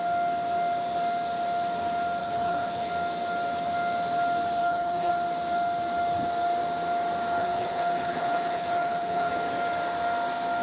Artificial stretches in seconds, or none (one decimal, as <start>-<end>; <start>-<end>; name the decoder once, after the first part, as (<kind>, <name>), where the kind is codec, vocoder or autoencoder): 2.2-2.9 (codec, HILCodec); 4.6-5.1; 7.4-9.3